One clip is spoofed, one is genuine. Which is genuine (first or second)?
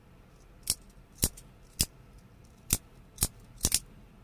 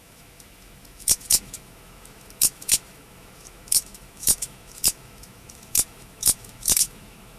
first